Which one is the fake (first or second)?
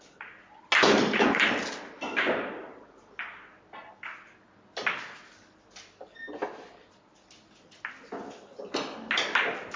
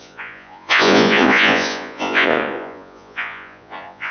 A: second